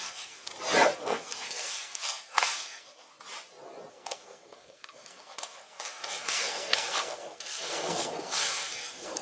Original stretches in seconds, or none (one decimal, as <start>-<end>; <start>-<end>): 0.5-1.0; 3.1-3.9